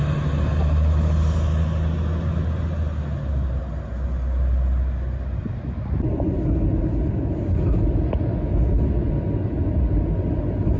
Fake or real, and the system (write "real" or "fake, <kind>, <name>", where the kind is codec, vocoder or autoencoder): real